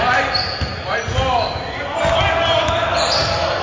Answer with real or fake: real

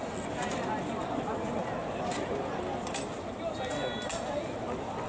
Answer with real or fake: real